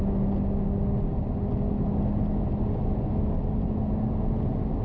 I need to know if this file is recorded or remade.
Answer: recorded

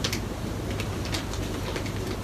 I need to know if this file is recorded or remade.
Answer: recorded